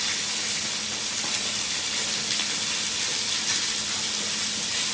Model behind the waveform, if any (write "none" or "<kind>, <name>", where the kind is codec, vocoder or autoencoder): none